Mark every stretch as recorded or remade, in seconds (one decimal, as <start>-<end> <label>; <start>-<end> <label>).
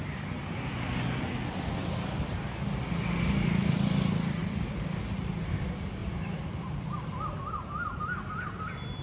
0.0-4.4 recorded; 4.4-5.0 remade; 5.0-6.0 recorded; 6.0-7.3 remade; 7.3-9.0 recorded